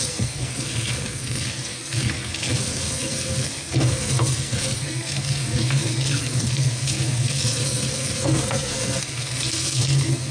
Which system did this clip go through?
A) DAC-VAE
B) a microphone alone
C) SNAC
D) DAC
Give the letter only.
C